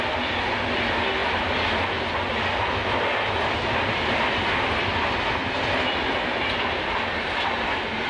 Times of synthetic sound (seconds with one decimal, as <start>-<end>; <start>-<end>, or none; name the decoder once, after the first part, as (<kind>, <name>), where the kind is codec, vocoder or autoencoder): none